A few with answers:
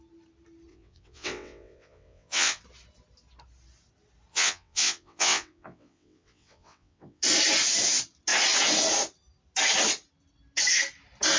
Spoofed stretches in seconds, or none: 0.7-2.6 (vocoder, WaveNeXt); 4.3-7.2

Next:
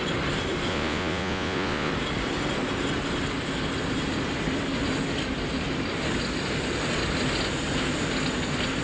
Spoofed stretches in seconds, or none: 0.7-1.9 (vocoder, Vocos)

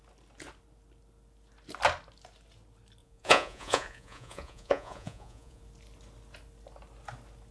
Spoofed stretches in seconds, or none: 3.0-5.6 (vocoder, Vocos)

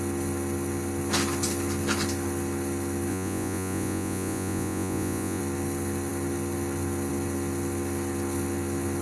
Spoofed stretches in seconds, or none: 3.1-5.4 (vocoder, Vocos)

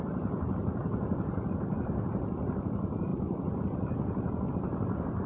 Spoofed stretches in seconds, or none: none

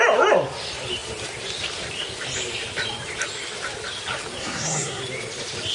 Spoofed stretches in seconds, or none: 4.4-5.0 (codec, SNAC)

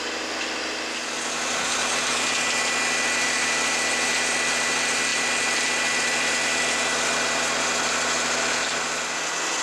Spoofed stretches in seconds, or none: none